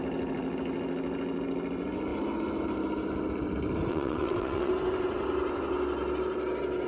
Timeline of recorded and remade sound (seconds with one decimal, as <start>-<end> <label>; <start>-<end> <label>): 0.0-3.9 recorded; 3.9-4.7 remade; 4.7-6.9 recorded